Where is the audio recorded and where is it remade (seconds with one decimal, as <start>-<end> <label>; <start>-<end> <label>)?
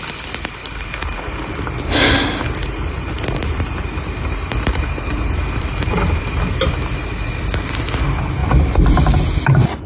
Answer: 0.0-0.6 recorded; 0.6-1.3 remade; 1.3-2.6 recorded; 2.6-7.4 remade; 7.4-8.4 recorded; 8.4-9.4 remade; 9.4-9.9 recorded